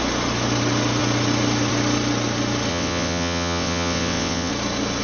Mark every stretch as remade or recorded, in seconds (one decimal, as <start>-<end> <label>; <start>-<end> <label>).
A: 0.0-2.7 recorded; 2.7-4.5 remade; 4.5-5.0 recorded